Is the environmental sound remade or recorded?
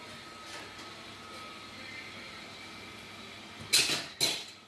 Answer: recorded